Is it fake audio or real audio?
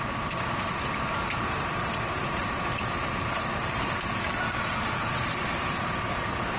fake